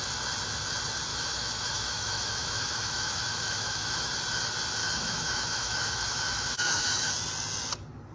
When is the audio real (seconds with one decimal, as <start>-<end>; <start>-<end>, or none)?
0.0-1.1; 4.1-4.8; 7.1-8.1